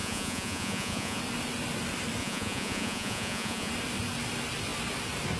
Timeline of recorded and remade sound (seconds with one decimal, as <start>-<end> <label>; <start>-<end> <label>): 0.0-1.2 remade; 1.2-2.2 recorded; 2.2-3.7 remade; 3.7-5.4 recorded